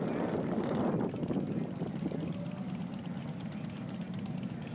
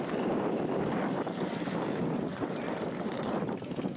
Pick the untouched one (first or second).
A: first